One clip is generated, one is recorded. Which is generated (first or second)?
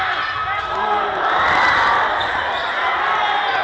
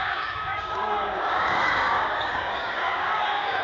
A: second